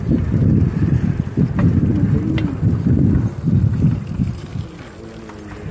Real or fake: real